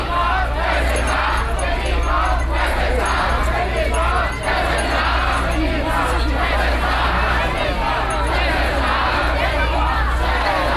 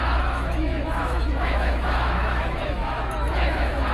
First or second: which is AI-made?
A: second